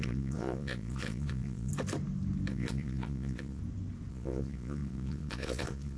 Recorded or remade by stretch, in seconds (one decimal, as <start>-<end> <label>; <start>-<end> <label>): 0.0-1.7 remade; 1.7-2.5 recorded; 2.5-3.6 remade; 3.6-4.1 recorded; 4.1-6.0 remade